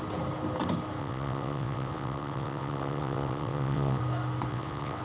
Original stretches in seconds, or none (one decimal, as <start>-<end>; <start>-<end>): 0.0-1.0; 4.0-4.5